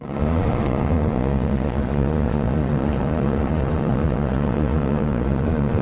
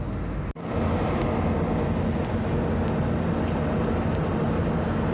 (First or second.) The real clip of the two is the second